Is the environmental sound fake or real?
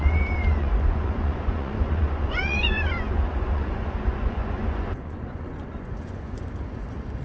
fake